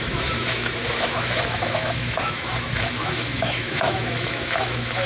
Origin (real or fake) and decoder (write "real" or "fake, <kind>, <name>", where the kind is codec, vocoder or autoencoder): fake, autoencoder, DAC-VAE